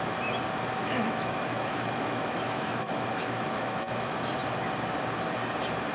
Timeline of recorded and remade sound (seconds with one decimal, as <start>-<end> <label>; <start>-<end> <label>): 0.0-0.8 recorded; 0.8-4.3 remade; 4.3-5.9 recorded